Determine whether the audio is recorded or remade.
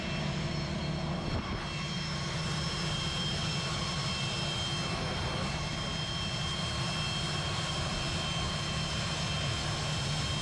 recorded